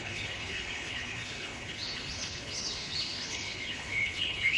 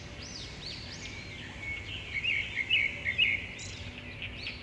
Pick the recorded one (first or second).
second